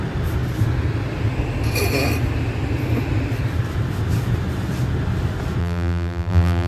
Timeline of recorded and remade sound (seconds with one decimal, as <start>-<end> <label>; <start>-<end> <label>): 0.0-5.6 recorded; 5.6-6.7 remade